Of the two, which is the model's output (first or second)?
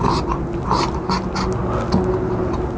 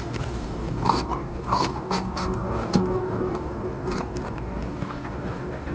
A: second